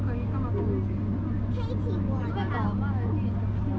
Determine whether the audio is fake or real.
real